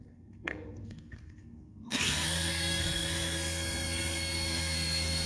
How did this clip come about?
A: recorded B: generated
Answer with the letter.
B